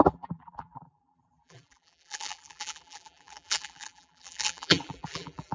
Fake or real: fake